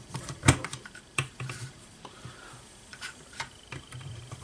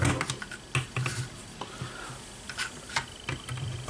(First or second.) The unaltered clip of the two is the second